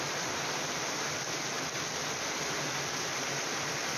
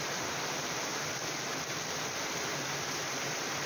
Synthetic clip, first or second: second